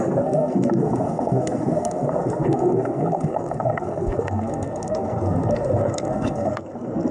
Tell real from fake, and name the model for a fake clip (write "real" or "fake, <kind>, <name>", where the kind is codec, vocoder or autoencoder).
fake, codec, SNAC